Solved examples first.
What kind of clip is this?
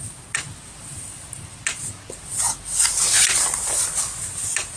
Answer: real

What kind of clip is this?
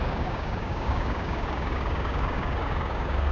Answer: fake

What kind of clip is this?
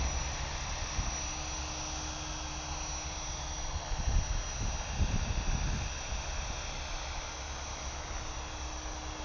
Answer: real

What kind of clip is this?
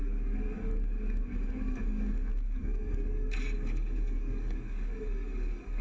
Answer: fake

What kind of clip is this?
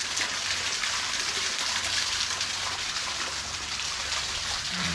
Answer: real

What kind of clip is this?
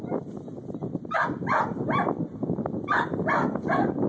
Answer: real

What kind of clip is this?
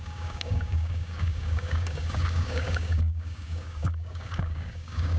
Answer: fake